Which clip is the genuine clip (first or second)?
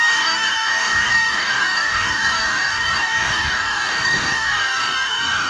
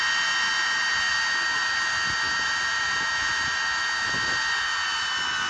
second